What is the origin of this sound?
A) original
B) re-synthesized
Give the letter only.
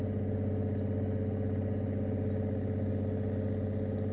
A